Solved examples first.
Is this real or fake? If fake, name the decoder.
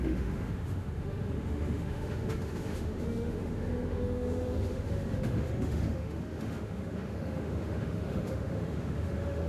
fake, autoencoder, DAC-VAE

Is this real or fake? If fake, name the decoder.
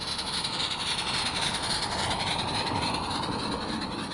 real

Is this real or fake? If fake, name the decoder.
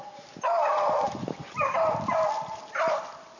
real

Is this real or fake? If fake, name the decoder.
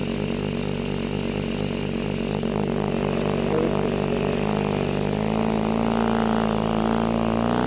real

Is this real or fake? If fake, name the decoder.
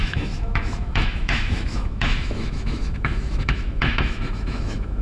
fake, autoencoder, DAC-VAE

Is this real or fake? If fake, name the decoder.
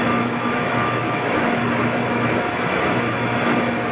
fake, autoencoder, DAC-VAE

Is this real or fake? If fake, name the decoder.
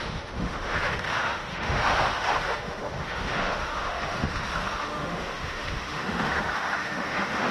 fake, autoencoder, DAC-VAE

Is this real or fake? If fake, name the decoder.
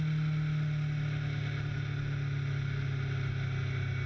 real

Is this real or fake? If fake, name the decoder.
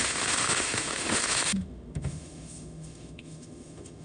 fake, autoencoder, DAC-VAE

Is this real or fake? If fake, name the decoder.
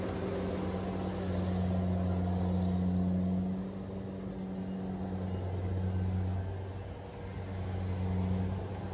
real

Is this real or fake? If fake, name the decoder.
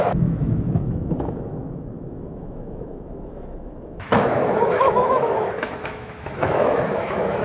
fake, autoencoder, DAC-VAE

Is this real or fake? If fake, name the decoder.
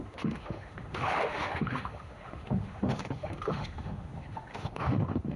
fake, autoencoder, DAC-VAE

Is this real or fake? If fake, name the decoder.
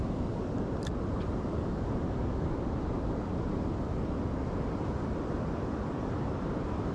real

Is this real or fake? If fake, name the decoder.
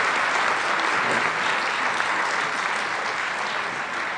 real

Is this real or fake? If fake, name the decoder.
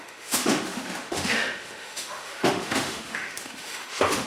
fake, autoencoder, DAC-VAE